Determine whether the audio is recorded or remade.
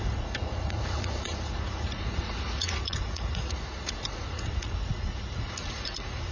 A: remade